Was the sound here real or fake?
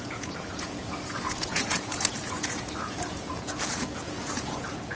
fake